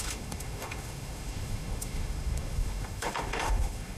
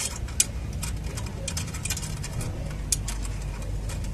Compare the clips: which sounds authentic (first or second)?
second